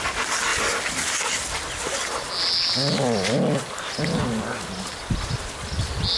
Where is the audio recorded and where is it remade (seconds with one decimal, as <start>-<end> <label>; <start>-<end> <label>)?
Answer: 0.0-6.2 recorded